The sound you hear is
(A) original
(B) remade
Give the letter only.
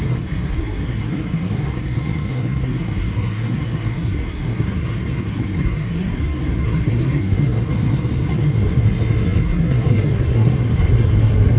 B